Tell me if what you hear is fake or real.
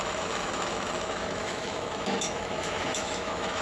fake